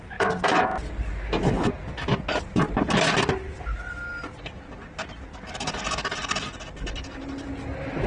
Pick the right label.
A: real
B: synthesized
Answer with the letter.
A